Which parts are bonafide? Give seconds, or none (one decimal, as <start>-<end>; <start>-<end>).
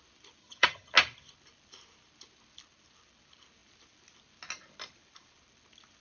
0.0-0.4; 0.9-6.0